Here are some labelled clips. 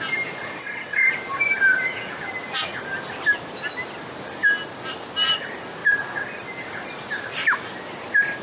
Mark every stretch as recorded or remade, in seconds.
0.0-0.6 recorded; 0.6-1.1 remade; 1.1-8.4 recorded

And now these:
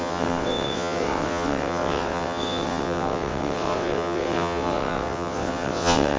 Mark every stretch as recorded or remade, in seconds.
0.0-6.2 remade